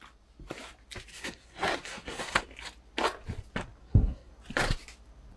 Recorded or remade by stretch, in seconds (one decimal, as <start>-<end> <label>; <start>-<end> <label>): 0.0-1.1 recorded; 1.1-2.4 remade; 2.4-3.8 recorded; 3.8-4.3 remade; 4.3-5.4 recorded